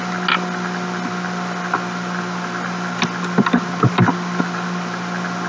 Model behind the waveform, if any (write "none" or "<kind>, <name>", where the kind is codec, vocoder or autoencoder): none